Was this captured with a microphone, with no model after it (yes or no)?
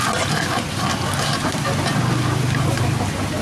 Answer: yes